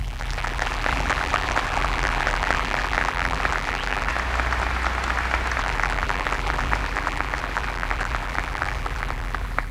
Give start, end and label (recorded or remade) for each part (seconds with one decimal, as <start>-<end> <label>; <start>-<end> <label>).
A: 0.0-4.1 remade; 4.1-5.6 recorded; 5.6-9.7 remade